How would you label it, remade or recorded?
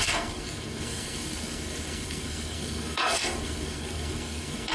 remade